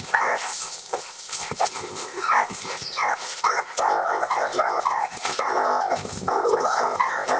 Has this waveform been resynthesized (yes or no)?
yes